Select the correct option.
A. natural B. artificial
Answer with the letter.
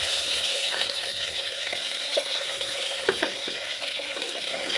B